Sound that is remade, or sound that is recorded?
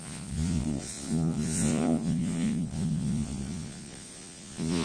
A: remade